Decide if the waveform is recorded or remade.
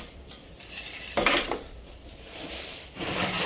remade